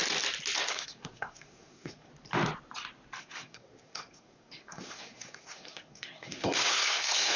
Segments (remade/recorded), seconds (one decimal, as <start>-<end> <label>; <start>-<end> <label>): 0.0-0.7 recorded; 0.7-2.1 remade; 2.1-3.2 recorded; 3.2-7.4 remade